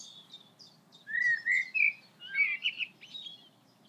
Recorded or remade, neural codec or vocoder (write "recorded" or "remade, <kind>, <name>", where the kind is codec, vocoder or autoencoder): recorded